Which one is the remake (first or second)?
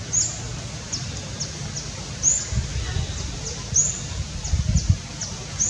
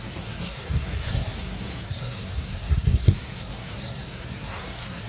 second